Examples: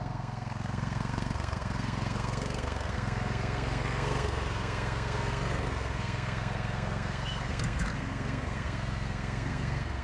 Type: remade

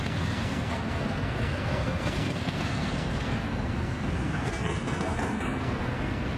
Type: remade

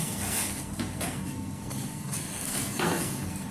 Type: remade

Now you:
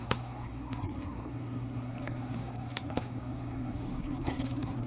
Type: remade